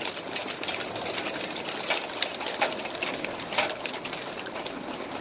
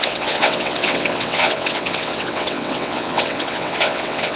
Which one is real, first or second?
first